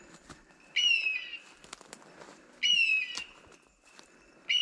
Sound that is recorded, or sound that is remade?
recorded